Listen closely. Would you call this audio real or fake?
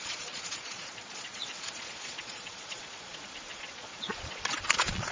fake